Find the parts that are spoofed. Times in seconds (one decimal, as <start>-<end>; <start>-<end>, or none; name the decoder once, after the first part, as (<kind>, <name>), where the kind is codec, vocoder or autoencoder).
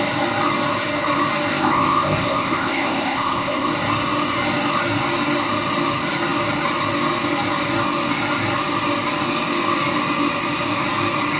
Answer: 1.5-3.7 (codec, ZipCodec)